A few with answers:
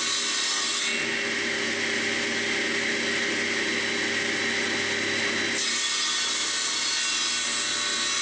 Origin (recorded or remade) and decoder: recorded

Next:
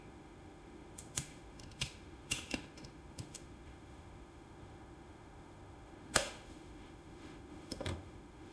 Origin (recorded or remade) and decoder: remade, autoencoder, DAC-VAE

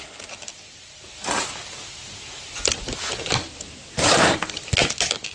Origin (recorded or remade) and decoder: recorded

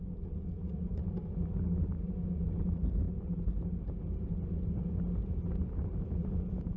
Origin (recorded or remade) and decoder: recorded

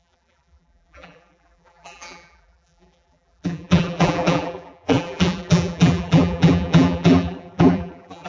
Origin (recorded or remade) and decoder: remade, vocoder, BigVGAN v2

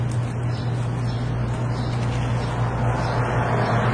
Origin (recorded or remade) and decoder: recorded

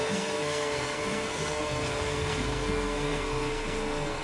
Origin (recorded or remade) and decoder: remade, codec, SNAC